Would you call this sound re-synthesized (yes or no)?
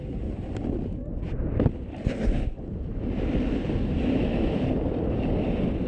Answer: no